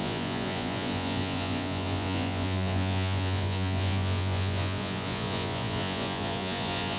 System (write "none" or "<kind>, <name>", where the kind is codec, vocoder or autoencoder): vocoder, Vocos